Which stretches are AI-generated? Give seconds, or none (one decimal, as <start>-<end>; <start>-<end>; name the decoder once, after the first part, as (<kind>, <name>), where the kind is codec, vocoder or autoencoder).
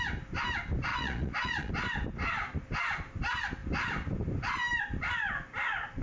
0.9-1.7 (vocoder, Vocos)